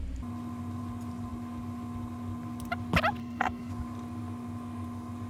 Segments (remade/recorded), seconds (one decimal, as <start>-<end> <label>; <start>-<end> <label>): 0.0-3.2 recorded; 3.2-3.7 remade; 3.7-5.3 recorded